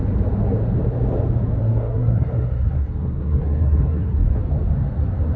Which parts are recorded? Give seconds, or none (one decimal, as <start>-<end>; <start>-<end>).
0.0-1.6; 4.4-5.4